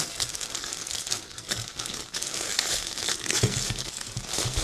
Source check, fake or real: fake